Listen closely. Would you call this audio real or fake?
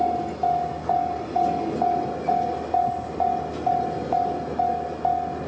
real